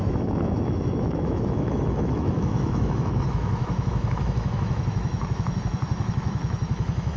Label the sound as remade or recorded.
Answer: remade